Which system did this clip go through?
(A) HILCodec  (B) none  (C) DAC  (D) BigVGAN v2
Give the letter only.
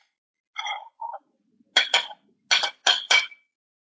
B